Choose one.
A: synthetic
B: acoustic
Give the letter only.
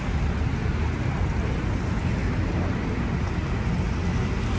B